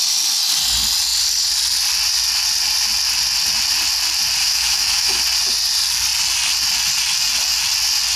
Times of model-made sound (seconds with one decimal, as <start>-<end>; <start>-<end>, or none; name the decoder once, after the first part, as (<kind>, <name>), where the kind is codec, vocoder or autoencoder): 4.4-5.2 (autoencoder, DAC-VAE)